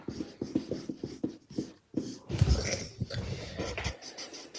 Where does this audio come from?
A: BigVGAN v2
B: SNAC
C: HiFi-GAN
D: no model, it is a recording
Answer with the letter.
D